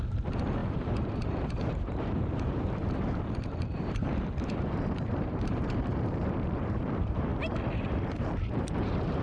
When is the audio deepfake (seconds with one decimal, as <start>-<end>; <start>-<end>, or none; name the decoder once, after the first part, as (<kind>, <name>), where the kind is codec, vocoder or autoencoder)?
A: 0.0-7.3 (vocoder, BigVGAN v2); 8.2-9.2

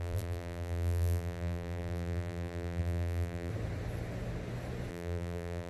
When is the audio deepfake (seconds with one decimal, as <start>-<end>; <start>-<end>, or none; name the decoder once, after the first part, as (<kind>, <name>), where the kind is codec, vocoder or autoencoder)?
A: 0.0-3.5 (vocoder, BigVGAN v2); 4.9-5.7